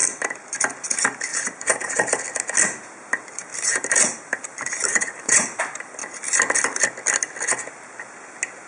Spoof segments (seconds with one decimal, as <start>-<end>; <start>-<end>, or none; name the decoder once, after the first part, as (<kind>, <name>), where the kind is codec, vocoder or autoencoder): 1.3-2.1 (vocoder, BigVGAN v2); 3.5-5.6